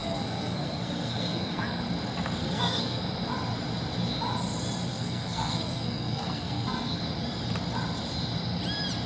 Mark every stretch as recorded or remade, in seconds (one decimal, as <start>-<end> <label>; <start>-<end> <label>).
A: 0.0-1.8 remade; 1.8-2.4 recorded; 2.4-3.0 remade; 3.0-4.9 recorded; 4.9-7.0 remade; 7.0-9.1 recorded